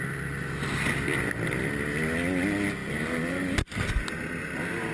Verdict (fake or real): real